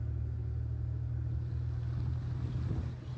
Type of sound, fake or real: real